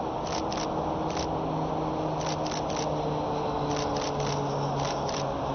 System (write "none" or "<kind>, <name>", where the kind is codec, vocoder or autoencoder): none